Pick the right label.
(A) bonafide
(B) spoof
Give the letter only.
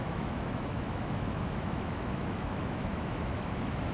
B